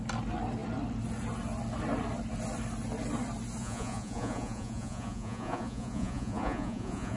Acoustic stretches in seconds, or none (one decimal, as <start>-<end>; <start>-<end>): 0.0-3.6